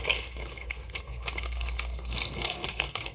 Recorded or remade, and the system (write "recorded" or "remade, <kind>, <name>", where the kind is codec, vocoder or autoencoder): remade, codec, SNAC